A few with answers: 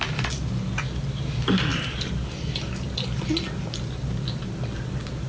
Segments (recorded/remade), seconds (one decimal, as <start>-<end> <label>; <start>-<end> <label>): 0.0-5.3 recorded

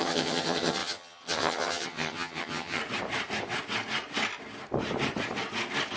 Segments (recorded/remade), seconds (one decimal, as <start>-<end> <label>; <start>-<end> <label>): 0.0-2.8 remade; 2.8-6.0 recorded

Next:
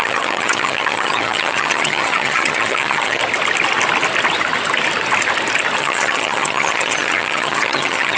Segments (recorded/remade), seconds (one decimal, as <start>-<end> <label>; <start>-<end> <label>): 0.0-3.2 remade; 3.2-5.8 recorded; 5.8-8.2 remade

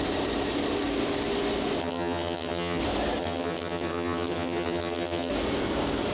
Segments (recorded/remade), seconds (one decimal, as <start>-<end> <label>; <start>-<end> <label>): 0.0-1.8 recorded; 1.8-2.8 remade; 2.8-3.2 recorded; 3.2-5.3 remade; 5.3-6.1 recorded

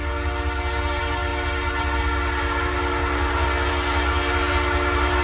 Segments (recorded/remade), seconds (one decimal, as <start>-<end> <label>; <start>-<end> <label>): 0.0-5.2 recorded